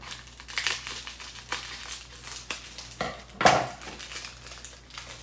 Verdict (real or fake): real